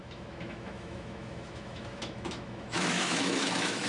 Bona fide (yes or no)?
no